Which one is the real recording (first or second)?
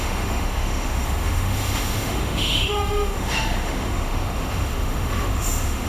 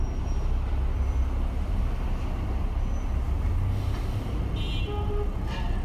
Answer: second